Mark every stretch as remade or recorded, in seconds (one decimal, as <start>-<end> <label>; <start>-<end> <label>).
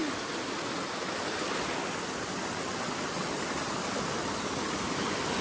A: 0.0-5.4 recorded